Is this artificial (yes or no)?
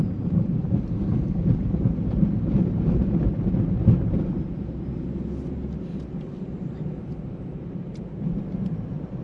yes